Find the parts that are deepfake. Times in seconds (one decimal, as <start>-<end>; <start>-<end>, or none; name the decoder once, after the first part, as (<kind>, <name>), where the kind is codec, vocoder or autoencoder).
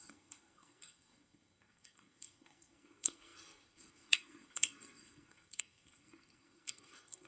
0.0-7.3 (codec, SNAC)